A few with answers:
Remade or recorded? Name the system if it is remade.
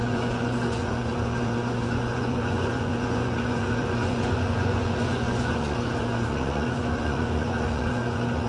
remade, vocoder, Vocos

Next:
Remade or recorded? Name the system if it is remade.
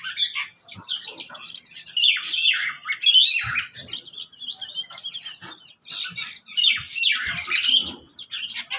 recorded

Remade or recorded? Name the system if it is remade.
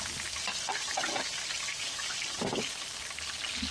recorded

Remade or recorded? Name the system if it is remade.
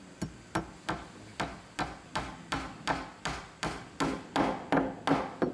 recorded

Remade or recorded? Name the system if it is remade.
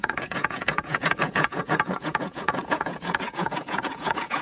remade, vocoder, Vocos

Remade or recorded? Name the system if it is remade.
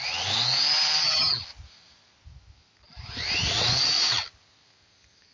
recorded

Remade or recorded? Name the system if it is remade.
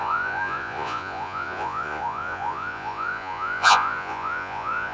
remade, vocoder, Vocos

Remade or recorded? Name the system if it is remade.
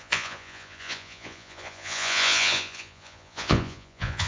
remade, vocoder, Vocos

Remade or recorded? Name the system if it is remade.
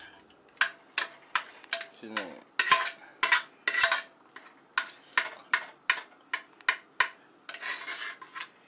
recorded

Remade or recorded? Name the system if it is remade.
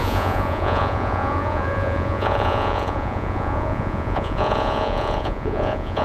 remade, vocoder, Vocos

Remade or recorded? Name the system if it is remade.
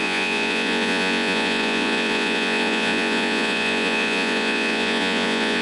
remade, vocoder, Vocos